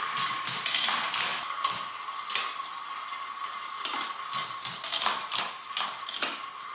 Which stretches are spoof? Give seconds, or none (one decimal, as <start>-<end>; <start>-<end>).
none